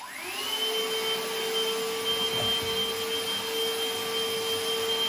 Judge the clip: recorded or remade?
recorded